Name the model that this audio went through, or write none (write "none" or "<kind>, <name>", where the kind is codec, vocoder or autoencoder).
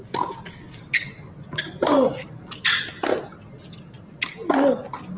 none